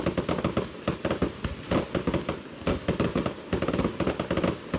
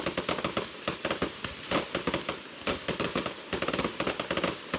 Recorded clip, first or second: first